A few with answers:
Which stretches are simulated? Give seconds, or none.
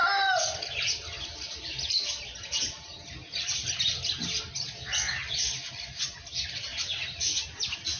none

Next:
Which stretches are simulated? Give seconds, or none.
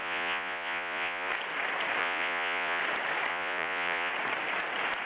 0.0-1.3 (vocoder, Vocos); 2.0-2.8; 3.3-4.1